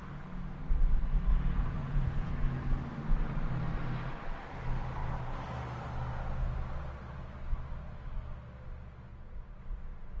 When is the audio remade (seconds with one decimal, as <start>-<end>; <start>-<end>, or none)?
1.3-2.3; 9.1-9.6